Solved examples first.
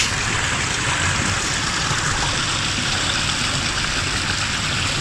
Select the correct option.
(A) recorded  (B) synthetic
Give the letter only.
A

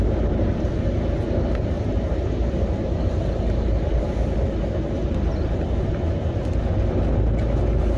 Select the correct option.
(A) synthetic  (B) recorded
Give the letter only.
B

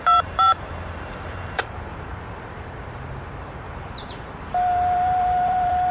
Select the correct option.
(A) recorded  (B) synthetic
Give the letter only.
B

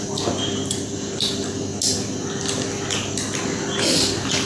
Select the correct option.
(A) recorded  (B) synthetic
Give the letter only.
A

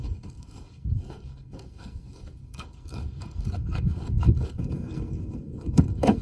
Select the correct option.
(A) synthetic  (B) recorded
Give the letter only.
A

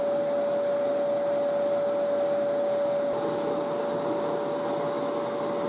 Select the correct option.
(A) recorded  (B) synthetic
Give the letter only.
A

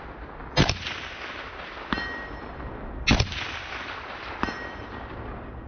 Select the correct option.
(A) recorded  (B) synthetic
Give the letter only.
A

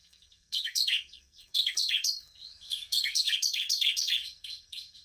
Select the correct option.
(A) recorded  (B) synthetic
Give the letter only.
B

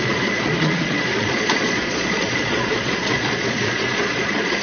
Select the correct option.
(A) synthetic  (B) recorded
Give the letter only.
A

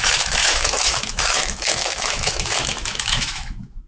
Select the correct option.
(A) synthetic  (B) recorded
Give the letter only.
A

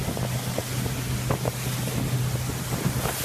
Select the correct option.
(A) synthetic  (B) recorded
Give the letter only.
B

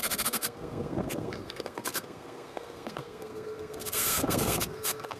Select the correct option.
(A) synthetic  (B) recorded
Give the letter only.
A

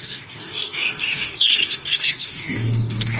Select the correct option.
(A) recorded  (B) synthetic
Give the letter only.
B